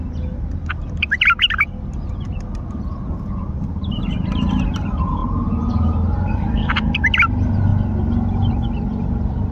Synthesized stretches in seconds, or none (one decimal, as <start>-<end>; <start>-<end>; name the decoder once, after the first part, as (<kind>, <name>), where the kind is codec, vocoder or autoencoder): none